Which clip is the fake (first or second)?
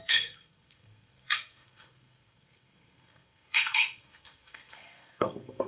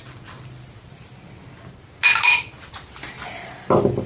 first